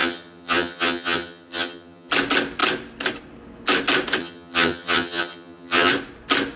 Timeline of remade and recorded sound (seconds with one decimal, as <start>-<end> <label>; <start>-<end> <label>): 0.0-2.1 remade; 2.1-4.2 recorded; 4.2-5.9 remade; 5.9-6.6 recorded